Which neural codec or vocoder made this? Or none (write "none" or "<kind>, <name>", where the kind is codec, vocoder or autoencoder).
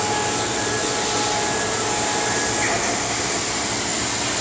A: vocoder, BigVGAN v2